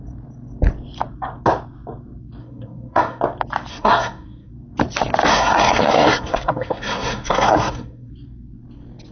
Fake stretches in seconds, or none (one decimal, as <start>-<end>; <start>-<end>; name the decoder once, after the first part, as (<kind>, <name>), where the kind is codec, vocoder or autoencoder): 2.4-3.2 (codec, SNAC); 3.7-4.5; 5.3-8.1